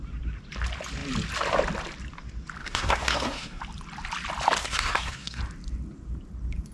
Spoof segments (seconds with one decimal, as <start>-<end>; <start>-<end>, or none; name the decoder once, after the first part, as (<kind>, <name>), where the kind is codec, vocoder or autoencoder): 2.6-3.6 (codec, SNAC); 4.6-5.4